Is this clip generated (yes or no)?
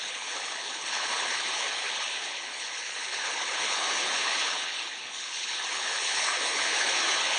yes